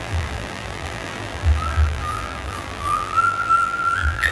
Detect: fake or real fake